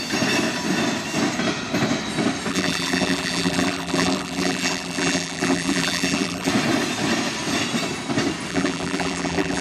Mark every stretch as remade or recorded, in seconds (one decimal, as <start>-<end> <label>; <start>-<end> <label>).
0.0-2.5 recorded; 2.5-6.5 remade; 6.5-8.5 recorded; 8.5-9.6 remade